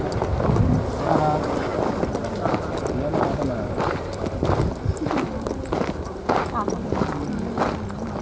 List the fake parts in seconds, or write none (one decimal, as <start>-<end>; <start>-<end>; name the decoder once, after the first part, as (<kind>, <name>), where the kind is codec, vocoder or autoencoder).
none